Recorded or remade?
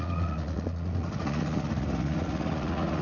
remade